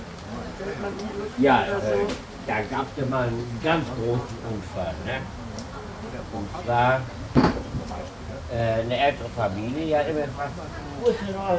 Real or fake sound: real